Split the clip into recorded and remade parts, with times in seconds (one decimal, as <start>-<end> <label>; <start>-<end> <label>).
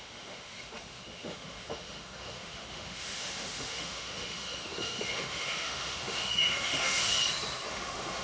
0.0-7.1 remade; 7.1-7.7 recorded; 7.7-8.2 remade